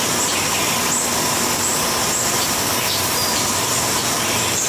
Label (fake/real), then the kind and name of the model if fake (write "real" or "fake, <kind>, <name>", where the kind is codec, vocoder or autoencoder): real